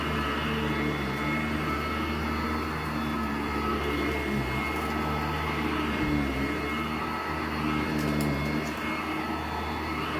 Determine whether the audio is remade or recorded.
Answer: recorded